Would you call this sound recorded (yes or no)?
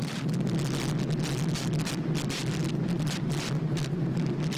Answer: yes